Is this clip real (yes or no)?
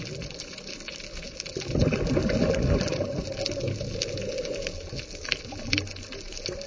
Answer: yes